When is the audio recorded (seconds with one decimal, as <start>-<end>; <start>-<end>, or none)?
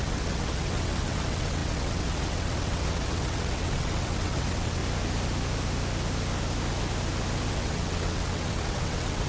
4.8-7.5